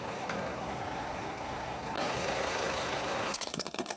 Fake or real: fake